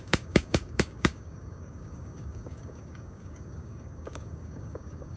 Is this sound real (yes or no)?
no